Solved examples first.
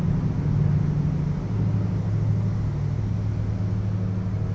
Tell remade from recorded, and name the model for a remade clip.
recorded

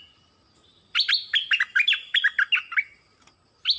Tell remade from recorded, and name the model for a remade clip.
recorded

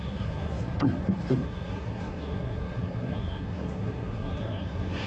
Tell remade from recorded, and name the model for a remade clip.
remade, codec, SNAC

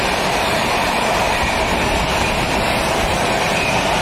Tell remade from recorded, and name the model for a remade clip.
recorded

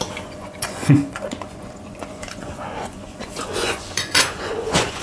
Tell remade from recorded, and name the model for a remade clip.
remade, vocoder, Vocos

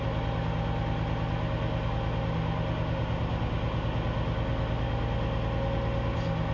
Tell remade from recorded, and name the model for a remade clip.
recorded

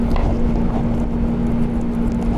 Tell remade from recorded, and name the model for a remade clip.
recorded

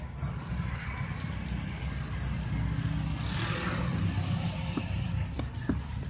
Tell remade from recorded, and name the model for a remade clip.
recorded